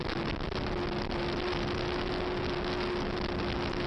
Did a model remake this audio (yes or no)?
no